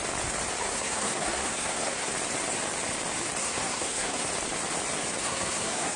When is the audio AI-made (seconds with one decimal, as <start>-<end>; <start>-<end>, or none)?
0.6-2.1; 3.4-4.3; 5.2-6.0